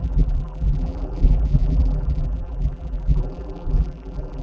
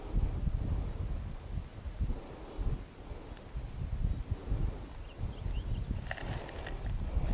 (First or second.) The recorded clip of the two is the second